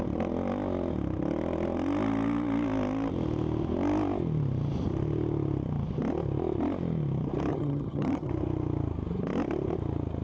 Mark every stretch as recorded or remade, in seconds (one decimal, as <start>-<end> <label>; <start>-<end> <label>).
0.0-7.5 recorded; 7.5-8.3 remade; 8.3-10.2 recorded